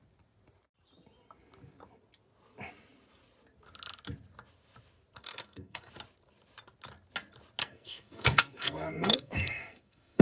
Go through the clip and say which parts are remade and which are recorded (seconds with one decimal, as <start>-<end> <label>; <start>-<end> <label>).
0.0-5.2 recorded; 5.2-5.9 remade; 5.9-7.6 recorded; 7.6-10.2 remade